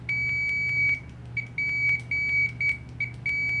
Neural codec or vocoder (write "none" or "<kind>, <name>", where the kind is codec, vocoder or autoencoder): none